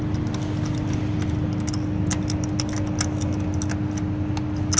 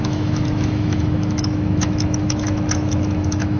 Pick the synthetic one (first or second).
second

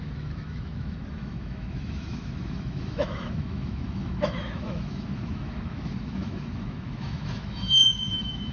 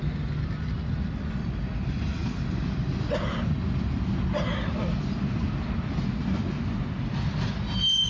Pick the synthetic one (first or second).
first